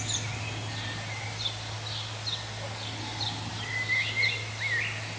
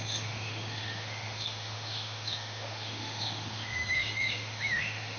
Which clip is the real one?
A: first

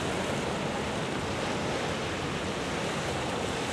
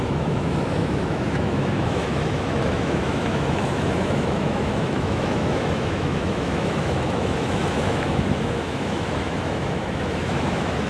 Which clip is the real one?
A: first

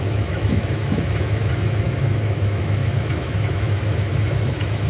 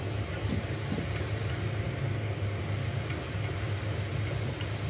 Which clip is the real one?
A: second